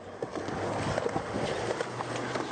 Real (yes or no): yes